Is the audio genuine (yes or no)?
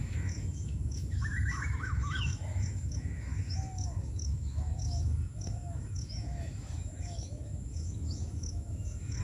no